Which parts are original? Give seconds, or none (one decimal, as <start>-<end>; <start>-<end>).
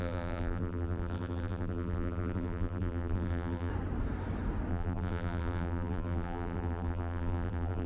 3.7-4.7